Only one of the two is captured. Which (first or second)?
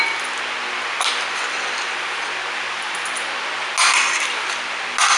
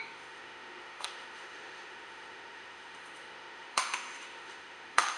first